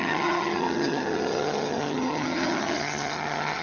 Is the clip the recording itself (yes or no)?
no